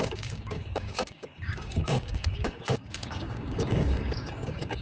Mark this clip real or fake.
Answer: fake